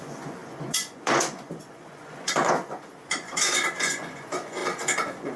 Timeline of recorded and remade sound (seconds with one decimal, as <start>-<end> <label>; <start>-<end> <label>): 0.0-5.4 remade

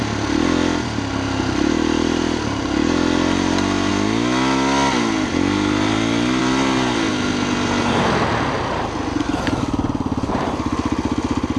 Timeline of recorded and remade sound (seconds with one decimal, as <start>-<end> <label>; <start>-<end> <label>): 0.0-11.6 recorded

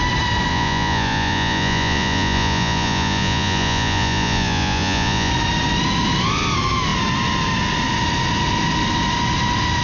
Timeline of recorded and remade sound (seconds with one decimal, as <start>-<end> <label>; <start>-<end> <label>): 0.0-0.5 recorded; 0.5-5.3 remade; 5.3-9.8 recorded

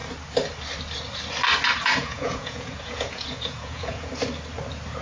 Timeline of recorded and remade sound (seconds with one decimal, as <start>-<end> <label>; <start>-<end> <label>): 0.0-2.0 recorded; 2.0-4.1 remade; 4.1-5.0 recorded

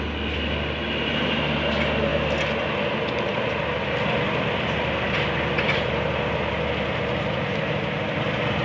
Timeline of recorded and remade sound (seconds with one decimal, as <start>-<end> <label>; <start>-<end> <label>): 0.0-8.6 recorded

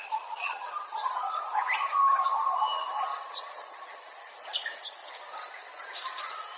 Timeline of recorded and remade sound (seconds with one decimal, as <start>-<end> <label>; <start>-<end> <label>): 0.0-1.6 remade; 1.6-3.2 recorded; 3.2-5.0 remade; 5.0-5.9 recorded; 5.9-6.6 remade